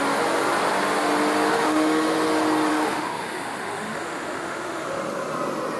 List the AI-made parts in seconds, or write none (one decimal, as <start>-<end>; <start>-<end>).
1.5-2.3; 2.7-5.0